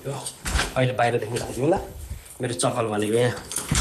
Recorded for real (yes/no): no